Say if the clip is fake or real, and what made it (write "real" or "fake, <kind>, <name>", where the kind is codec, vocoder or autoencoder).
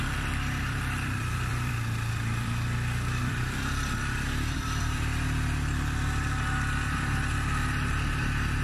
fake, vocoder, BigVGAN v2